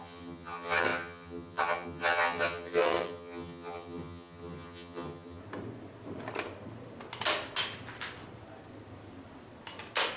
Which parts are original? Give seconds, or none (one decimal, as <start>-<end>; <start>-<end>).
5.4-10.2